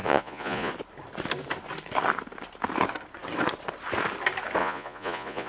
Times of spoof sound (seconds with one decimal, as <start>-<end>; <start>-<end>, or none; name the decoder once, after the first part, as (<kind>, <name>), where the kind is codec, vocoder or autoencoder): 0.0-0.7 (vocoder, Vocos); 4.6-5.5